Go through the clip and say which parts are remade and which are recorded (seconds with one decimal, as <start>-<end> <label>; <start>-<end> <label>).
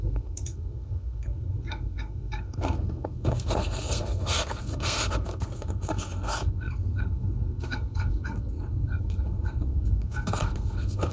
0.0-11.1 remade